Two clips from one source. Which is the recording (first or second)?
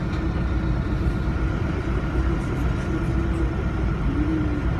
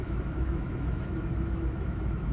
first